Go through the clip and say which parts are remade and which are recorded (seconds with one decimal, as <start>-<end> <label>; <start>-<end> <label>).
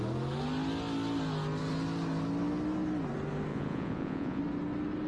0.0-3.5 recorded; 3.5-4.4 remade; 4.4-5.1 recorded